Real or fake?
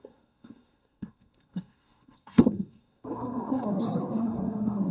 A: fake